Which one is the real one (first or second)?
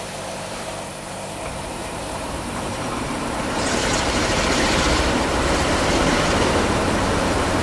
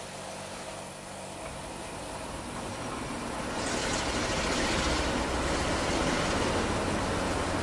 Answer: second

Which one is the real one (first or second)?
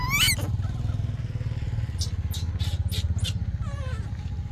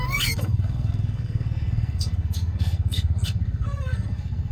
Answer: first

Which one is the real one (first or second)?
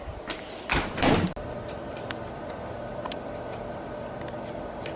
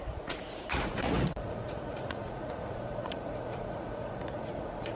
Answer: first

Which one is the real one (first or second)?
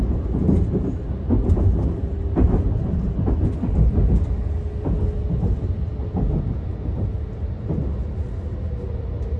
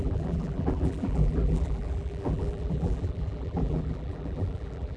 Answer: first